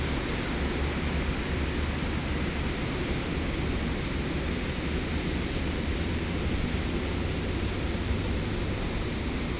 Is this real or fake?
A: real